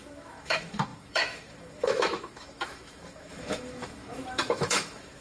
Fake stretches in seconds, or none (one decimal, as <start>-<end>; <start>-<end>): 0.0-5.2